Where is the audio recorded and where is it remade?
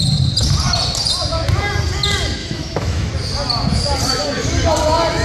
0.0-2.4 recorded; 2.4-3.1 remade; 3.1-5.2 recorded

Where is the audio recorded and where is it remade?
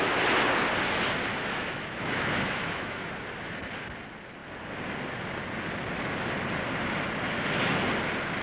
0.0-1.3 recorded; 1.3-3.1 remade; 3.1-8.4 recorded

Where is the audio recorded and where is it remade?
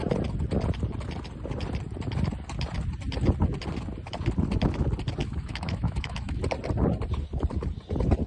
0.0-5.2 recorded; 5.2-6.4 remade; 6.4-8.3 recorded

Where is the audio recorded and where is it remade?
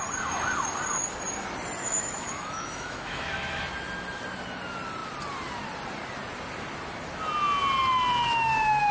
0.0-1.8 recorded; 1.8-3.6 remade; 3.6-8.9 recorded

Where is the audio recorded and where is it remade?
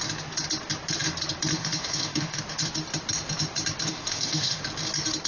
0.0-1.5 recorded; 1.5-2.4 remade; 2.4-3.9 recorded; 3.9-4.6 remade; 4.6-5.3 recorded